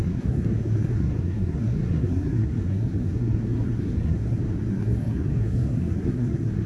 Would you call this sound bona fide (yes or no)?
no